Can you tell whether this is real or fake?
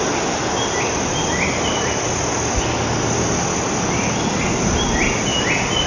real